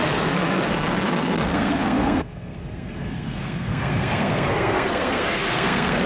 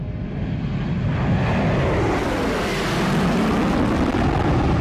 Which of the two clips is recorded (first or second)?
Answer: second